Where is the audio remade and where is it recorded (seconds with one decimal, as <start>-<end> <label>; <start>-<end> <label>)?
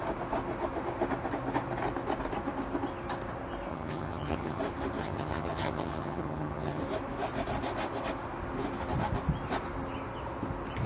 0.0-3.7 recorded; 3.7-4.6 remade; 4.6-5.0 recorded; 5.0-6.8 remade; 6.8-10.9 recorded